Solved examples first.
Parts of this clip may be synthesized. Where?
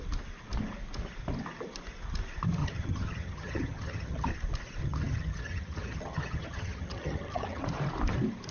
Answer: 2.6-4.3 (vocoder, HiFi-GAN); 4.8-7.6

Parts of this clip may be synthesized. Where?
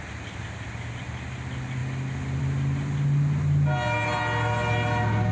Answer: none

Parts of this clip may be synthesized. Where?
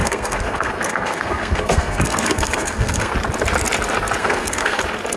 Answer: 0.0-3.1 (codec, SNAC); 4.2-4.8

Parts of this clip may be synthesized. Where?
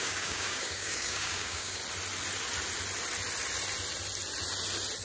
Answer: 0.0-1.8 (codec, DAC)